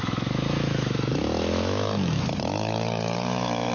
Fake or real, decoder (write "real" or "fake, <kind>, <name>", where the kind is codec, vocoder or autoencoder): fake, autoencoder, DAC-VAE